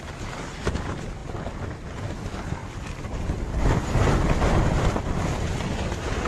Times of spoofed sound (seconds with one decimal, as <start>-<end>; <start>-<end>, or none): none